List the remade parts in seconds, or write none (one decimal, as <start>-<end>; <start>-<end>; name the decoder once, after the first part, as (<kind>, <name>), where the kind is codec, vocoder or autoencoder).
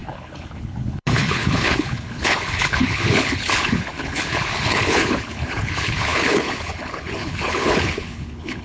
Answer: 0.0-8.6 (codec, HILCodec)